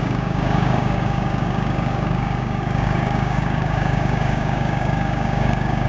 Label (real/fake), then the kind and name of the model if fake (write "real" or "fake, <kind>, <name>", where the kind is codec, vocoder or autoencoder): fake, codec, DAC